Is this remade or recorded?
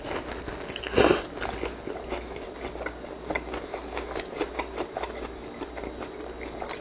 recorded